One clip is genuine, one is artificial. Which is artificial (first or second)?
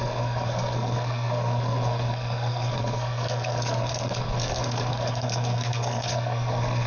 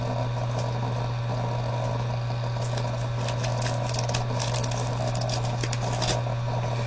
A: first